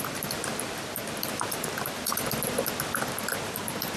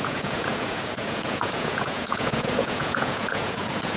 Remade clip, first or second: second